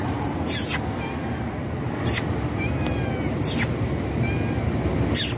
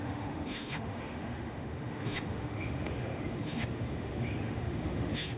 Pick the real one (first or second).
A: first